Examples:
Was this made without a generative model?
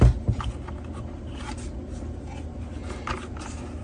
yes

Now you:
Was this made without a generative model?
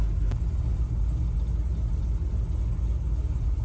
yes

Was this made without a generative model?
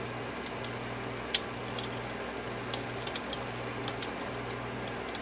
yes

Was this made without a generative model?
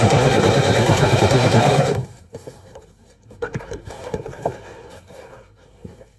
no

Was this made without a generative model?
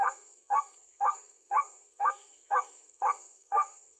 no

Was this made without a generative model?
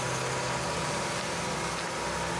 yes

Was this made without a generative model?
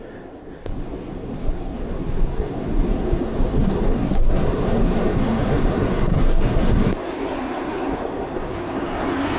no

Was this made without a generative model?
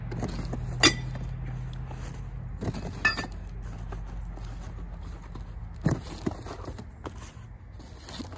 yes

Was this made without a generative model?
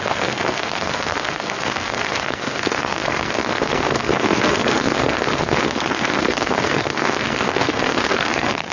no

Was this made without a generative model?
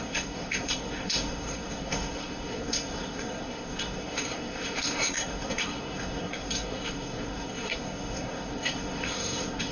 no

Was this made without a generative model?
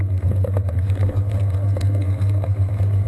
no